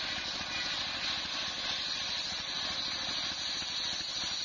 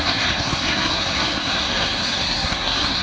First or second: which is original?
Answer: first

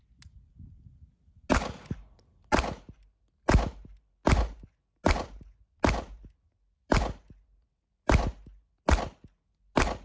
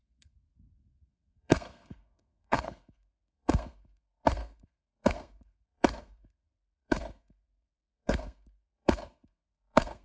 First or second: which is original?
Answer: first